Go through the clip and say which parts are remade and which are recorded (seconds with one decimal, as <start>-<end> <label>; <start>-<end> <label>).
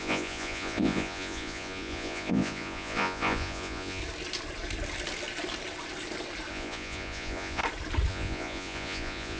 0.0-4.0 remade; 4.0-6.5 recorded; 6.5-7.6 remade; 7.6-8.1 recorded; 8.1-9.4 remade